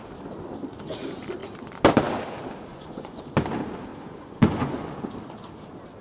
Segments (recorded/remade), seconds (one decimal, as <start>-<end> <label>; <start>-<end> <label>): 0.0-2.7 recorded; 2.7-3.2 remade; 3.2-3.9 recorded; 3.9-5.0 remade; 5.0-6.0 recorded